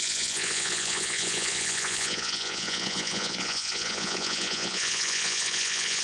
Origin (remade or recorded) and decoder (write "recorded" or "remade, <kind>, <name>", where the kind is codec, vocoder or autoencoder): remade, vocoder, Vocos